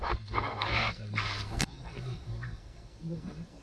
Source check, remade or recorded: remade